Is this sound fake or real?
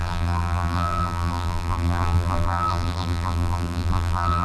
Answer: fake